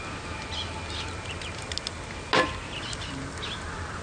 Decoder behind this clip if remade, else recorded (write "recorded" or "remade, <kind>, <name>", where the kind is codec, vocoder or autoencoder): recorded